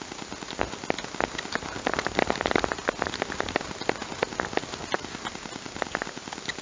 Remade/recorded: recorded